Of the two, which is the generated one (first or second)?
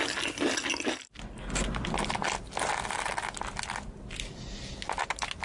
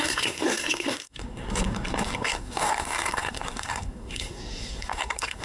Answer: second